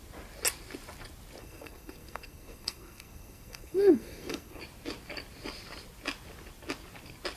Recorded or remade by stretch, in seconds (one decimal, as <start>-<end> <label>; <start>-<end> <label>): 0.0-1.4 recorded; 1.4-4.6 remade; 4.6-7.4 recorded